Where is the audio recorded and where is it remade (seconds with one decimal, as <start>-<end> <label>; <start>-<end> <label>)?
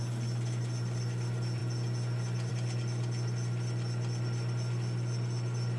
0.0-5.8 recorded